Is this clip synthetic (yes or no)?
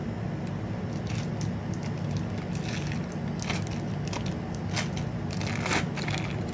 no